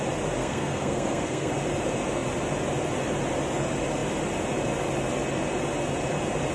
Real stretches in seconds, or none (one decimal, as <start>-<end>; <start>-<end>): 0.0-0.4; 1.5-6.5

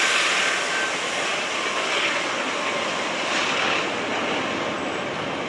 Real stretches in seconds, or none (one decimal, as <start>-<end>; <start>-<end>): 0.0-5.5

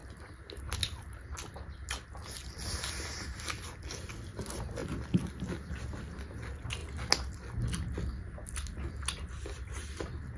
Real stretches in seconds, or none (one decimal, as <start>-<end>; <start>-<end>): 0.0-10.4

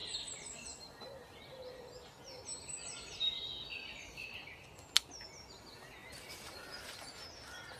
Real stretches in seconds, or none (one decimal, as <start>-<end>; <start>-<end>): 0.0-2.8; 3.4-6.0; 7.2-7.8